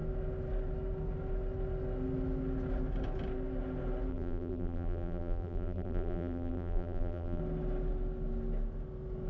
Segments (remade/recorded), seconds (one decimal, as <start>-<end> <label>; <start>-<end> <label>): 0.0-4.1 recorded; 4.1-7.4 remade; 7.4-9.3 recorded